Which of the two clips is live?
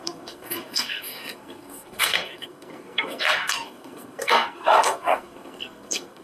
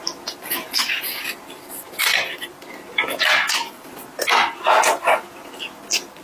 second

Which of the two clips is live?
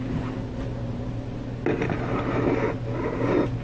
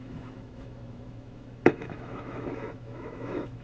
first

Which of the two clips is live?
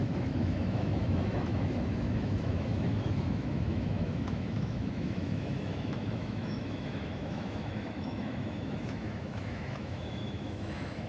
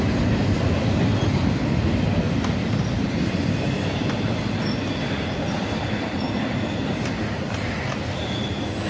second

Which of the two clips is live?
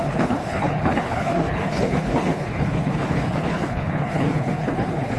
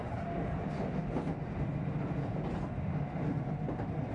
second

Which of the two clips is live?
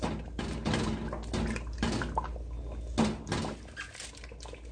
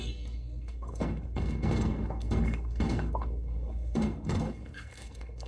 first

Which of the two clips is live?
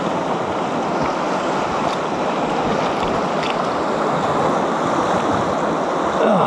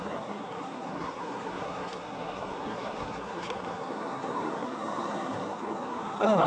first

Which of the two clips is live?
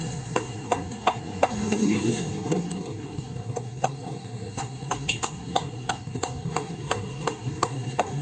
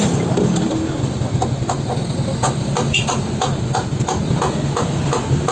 second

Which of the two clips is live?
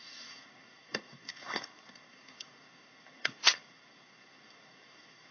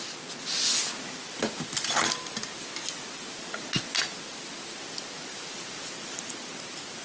second